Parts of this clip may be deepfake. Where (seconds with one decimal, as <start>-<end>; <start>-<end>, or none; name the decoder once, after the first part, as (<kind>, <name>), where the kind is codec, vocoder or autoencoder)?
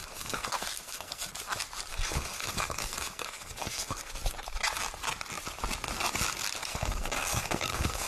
0.0-1.3 (codec, SNAC); 1.9-4.1; 6.6-8.1